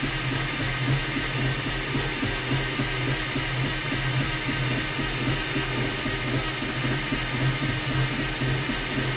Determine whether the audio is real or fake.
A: real